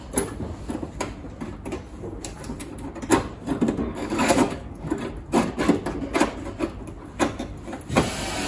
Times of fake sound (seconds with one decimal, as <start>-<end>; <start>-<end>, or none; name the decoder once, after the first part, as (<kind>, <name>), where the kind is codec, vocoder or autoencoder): 3.9-5.0 (codec, DAC)